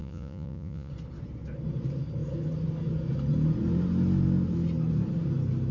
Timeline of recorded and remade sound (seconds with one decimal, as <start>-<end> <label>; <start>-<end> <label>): 0.0-0.9 remade; 0.9-5.7 recorded